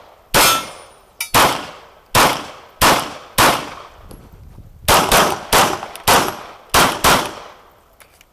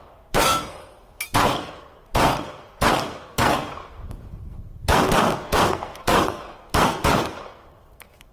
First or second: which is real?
first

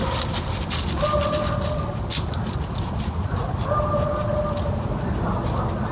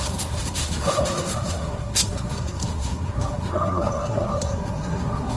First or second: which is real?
first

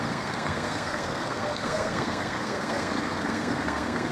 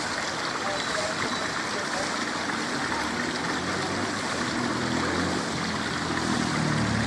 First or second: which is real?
second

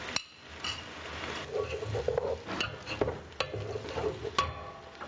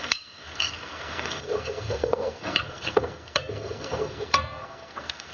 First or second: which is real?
first